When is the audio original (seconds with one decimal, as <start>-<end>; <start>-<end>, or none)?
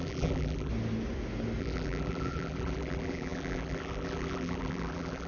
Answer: 0.7-1.6